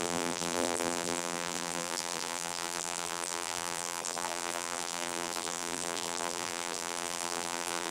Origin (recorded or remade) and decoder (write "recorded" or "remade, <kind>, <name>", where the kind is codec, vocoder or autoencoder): remade, vocoder, BigVGAN v2